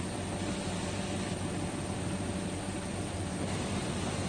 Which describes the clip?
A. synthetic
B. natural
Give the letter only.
B